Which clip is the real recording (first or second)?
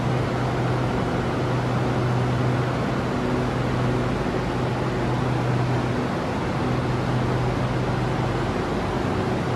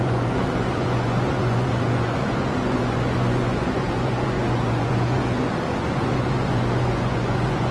first